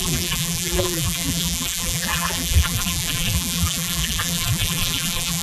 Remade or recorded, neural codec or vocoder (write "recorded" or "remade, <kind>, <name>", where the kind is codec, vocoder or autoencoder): remade, vocoder, BigVGAN v2